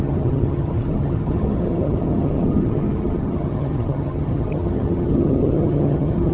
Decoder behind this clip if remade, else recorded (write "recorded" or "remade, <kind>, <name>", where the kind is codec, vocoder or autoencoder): remade, vocoder, HiFi-GAN